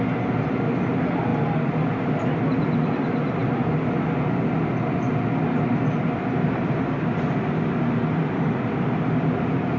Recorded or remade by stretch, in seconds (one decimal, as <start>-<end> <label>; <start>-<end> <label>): 0.0-9.8 recorded